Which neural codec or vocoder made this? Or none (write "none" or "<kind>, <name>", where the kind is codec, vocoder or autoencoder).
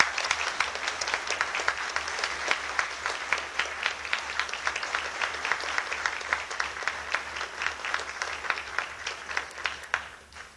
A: vocoder, BigVGAN v2